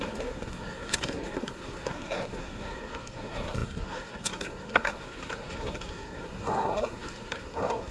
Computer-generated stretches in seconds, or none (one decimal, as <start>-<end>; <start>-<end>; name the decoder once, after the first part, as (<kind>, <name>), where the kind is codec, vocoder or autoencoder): 0.0-7.9 (codec, SNAC)